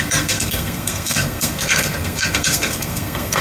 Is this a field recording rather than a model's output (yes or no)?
no